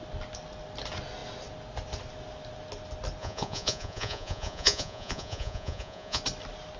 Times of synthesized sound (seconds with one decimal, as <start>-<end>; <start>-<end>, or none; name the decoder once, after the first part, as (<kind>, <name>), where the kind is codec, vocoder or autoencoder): 3.2-6.2 (vocoder, Vocos)